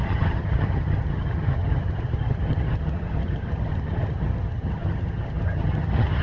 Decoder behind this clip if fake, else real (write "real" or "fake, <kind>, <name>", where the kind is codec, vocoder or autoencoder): fake, vocoder, HiFi-GAN